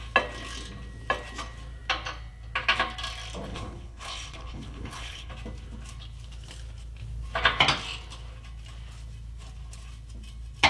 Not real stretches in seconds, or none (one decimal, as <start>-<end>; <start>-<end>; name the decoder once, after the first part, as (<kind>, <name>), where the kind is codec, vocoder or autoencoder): 3.5-5.3 (codec, HILCodec)